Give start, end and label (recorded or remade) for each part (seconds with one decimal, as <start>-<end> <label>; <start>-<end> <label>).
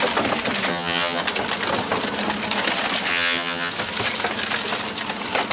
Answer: 0.0-0.7 recorded; 0.7-1.2 remade; 1.2-3.1 recorded; 3.1-3.7 remade; 3.7-5.5 recorded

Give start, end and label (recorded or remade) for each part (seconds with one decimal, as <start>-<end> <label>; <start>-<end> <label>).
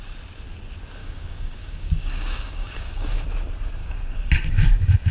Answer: 0.0-1.0 recorded; 1.0-3.2 remade; 3.2-3.8 recorded; 3.8-4.3 remade; 4.3-5.1 recorded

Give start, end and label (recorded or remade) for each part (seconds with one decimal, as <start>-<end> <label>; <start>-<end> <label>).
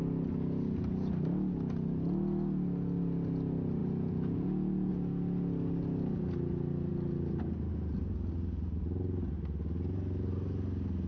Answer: 0.0-3.8 recorded; 3.8-4.9 remade; 4.9-11.1 recorded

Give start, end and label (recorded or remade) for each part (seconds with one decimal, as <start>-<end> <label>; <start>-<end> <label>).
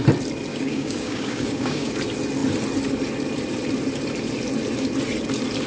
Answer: 0.0-0.5 recorded; 0.5-1.9 remade; 1.9-5.7 recorded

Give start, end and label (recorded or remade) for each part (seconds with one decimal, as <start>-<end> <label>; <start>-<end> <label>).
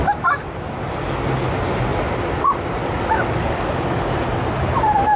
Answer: 0.0-1.9 recorded; 1.9-5.2 remade